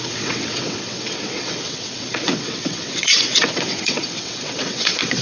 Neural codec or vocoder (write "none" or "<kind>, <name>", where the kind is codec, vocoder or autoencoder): vocoder, WaveNeXt